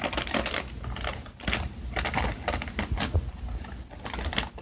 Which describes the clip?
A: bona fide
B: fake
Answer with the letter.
A